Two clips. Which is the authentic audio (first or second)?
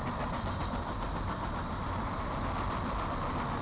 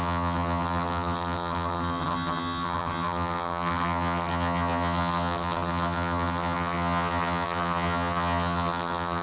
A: first